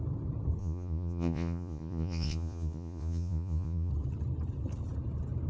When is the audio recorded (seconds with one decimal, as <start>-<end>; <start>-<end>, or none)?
0.0-0.6; 3.9-5.5